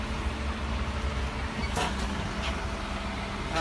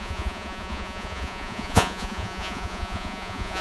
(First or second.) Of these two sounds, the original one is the first